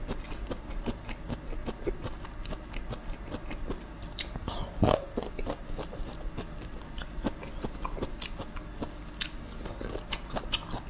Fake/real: real